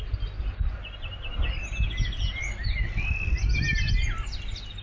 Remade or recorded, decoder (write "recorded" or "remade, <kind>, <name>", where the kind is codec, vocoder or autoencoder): recorded